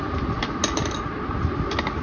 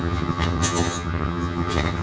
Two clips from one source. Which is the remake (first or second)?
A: second